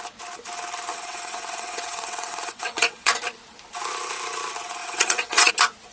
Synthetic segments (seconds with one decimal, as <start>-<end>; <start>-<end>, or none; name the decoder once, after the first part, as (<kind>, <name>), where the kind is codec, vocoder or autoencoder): 0.9-3.1 (vocoder, WaveNeXt); 4.8-5.5